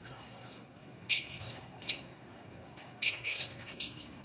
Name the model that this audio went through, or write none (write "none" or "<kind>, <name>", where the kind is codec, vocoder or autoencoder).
codec, SNAC